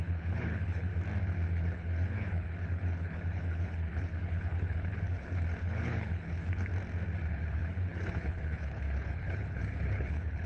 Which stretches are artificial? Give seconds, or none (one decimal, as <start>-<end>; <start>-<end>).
0.0-0.9; 1.5-6.7; 7.3-10.5